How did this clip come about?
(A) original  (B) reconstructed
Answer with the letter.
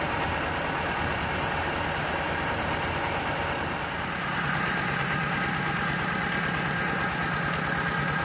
A